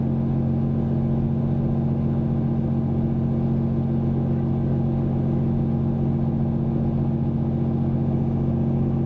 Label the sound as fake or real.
real